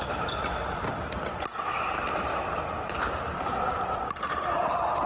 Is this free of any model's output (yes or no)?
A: no